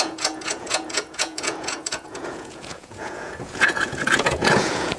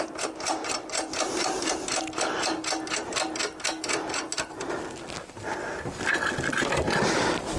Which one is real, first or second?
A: second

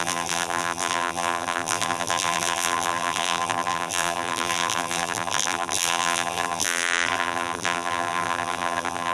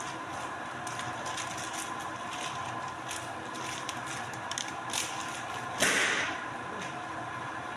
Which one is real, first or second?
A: second